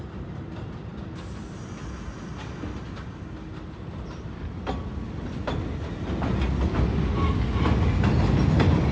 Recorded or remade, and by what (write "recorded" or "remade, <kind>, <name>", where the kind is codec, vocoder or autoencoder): recorded